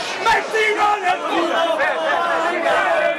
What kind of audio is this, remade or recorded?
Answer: recorded